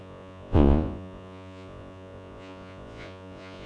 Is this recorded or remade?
remade